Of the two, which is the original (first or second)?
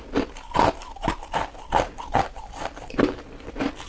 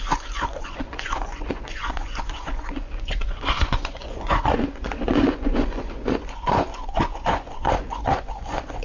first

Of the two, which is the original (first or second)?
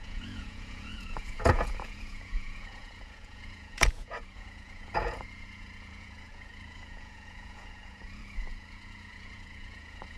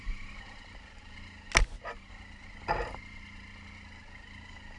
second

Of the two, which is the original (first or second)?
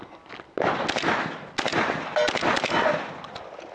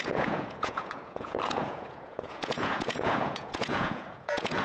first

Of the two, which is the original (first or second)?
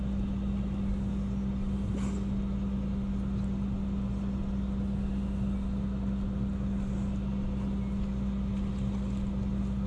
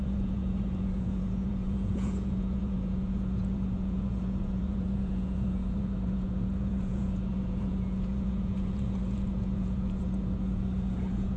first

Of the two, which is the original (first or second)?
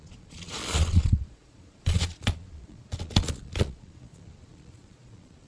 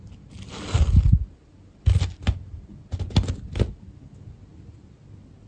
second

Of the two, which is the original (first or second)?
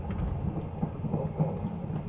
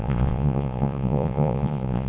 first